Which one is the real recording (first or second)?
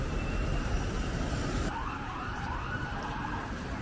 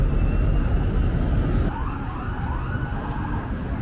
second